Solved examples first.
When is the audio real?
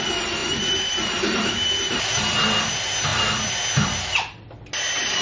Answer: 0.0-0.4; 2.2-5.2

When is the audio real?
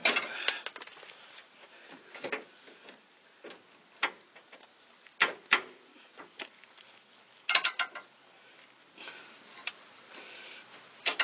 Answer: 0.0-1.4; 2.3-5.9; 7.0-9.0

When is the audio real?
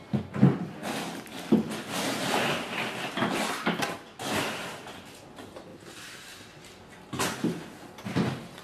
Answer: 0.0-8.6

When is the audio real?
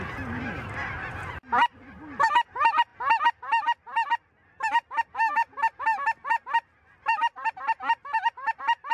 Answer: 2.9-5.3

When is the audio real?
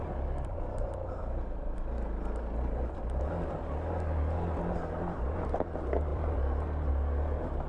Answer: 0.0-6.1; 6.9-7.7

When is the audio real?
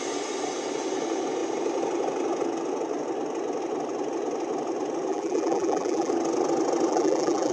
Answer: 0.0-5.1; 6.1-6.9